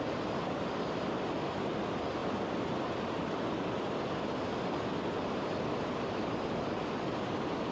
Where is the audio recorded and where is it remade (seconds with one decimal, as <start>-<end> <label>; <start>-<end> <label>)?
0.0-7.7 recorded

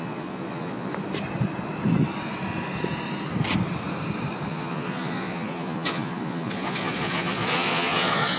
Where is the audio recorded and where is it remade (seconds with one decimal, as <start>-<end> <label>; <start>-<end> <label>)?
0.0-0.9 remade; 0.9-4.5 recorded; 4.5-8.4 remade